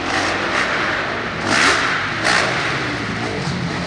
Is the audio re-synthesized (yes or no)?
no